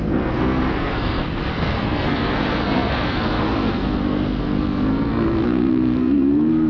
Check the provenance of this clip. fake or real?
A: fake